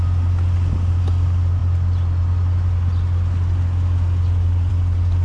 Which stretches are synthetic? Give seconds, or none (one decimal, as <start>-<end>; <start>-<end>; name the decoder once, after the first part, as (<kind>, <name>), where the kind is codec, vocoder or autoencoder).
none